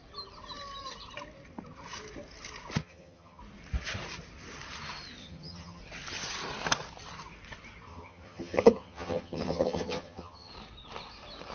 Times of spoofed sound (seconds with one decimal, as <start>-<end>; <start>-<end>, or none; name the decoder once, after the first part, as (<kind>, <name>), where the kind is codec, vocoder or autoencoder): 2.8-3.4 (vocoder, HiFi-GAN); 5.2-5.8; 7.9-10.5